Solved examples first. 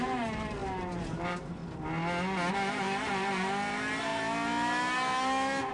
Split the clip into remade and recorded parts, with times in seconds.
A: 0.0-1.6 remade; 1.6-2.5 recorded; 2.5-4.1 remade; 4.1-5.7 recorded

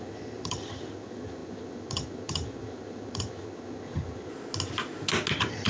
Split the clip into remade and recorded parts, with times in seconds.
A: 0.0-4.3 remade; 4.3-5.3 recorded; 5.3-5.7 remade

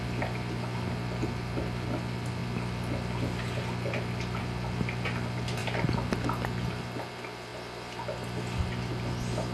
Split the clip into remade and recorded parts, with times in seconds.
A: 0.0-9.5 recorded

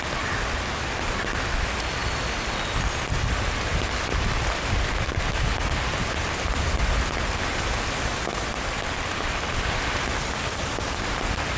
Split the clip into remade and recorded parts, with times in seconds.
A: 0.0-11.6 recorded

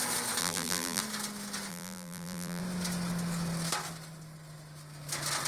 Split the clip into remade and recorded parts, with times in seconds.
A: 0.0-0.4 recorded; 0.4-1.0 remade; 1.0-1.7 recorded; 1.7-2.6 remade; 2.6-5.5 recorded